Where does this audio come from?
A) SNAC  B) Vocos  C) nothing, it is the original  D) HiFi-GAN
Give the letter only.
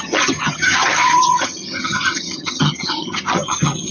D